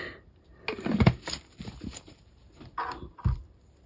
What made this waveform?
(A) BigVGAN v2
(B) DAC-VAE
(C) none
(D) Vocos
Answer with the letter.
C